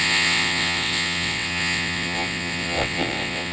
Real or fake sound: fake